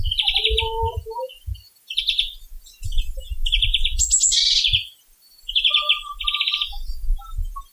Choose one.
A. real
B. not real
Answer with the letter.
A